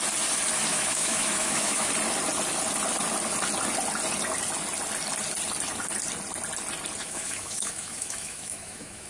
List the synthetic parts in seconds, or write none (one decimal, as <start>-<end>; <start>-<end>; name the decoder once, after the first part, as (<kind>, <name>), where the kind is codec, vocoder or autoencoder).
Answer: 0.7-1.9 (autoencoder, DAC-VAE); 7.0-9.1